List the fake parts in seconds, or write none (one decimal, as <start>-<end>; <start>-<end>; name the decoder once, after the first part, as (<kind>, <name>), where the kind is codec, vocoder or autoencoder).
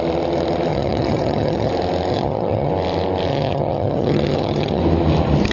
0.7-1.7 (vocoder, HiFi-GAN); 2.1-2.7; 3.3-4.8